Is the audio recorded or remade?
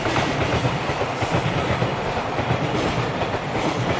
remade